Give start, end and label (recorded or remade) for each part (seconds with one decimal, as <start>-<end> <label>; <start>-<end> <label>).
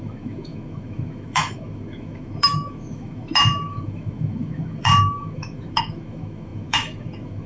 0.0-7.5 remade